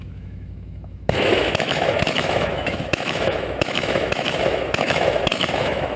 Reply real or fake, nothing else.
fake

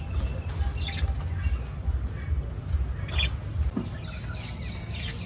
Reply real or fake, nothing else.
real